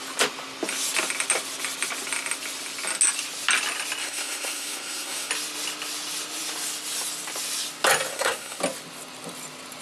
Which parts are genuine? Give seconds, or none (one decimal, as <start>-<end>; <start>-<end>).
0.0-4.0; 5.3-8.1; 8.6-9.8